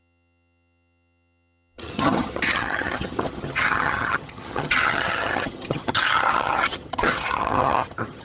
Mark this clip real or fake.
fake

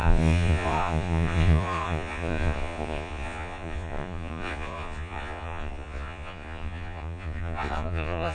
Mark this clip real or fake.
fake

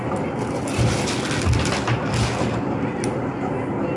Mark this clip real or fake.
real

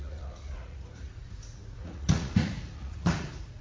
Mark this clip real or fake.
fake